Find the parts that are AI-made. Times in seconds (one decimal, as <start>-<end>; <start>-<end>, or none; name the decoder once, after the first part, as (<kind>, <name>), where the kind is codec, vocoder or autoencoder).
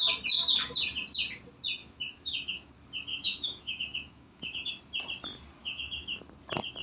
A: 1.8-2.7 (autoencoder, DAC-VAE); 3.1-4.7; 5.6-6.2